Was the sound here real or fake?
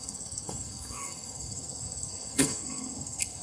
fake